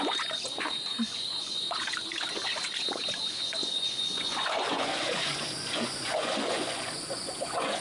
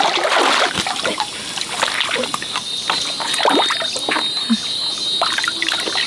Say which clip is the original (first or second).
second